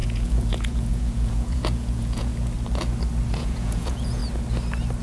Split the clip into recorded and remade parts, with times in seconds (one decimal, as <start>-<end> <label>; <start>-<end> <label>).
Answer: 0.0-2.3 remade; 2.3-3.3 recorded; 3.3-4.2 remade; 4.2-5.0 recorded